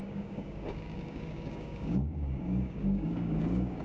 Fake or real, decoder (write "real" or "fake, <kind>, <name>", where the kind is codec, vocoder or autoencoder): fake, codec, DAC